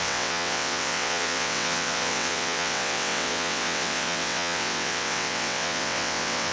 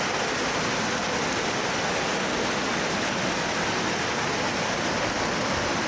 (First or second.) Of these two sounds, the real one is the second